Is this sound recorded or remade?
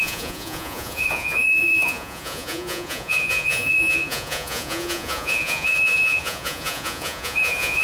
remade